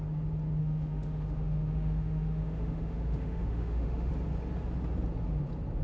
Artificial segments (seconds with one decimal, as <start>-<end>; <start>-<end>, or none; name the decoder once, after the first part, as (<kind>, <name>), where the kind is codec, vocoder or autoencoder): 0.6-4.1 (autoencoder, DAC-VAE)

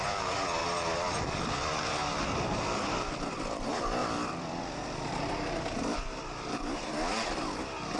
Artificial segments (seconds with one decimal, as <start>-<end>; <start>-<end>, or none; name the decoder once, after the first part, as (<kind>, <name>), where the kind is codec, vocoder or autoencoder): 0.0-0.6 (vocoder, BigVGAN v2); 2.2-8.0

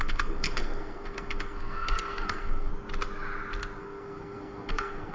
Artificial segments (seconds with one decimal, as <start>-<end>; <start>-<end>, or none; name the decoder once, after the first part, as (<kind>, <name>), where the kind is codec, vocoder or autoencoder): 0.0-2.7 (codec, SNAC); 3.8-5.1

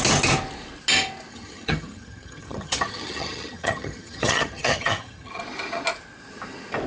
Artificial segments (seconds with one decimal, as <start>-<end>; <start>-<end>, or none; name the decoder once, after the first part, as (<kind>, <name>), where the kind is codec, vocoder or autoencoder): 1.3-5.4 (vocoder, HiFi-GAN)

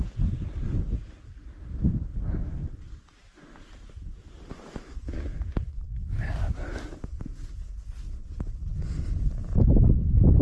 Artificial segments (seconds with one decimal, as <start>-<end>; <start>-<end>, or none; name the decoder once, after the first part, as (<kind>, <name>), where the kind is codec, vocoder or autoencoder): 2.6-3.3 (vocoder, BigVGAN v2); 6.9-7.9

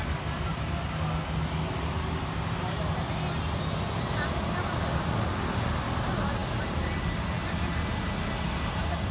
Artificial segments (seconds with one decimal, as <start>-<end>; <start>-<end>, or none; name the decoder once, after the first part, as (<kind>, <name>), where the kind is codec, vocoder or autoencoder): none

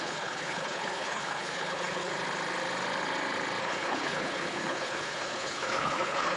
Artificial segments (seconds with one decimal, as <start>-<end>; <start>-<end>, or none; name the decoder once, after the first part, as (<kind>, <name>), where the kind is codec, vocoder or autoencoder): 0.0-2.1 (codec, HILCodec); 3.6-6.4